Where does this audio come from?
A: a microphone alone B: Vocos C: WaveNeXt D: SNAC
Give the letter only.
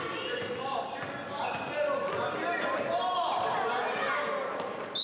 A